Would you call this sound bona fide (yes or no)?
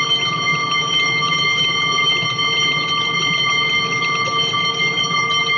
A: yes